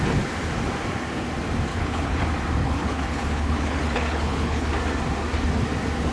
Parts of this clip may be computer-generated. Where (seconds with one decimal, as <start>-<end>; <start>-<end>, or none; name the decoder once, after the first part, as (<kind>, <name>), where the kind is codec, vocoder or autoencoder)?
1.7-2.2 (codec, HILCodec); 2.6-4.7